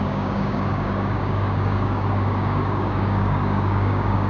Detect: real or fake fake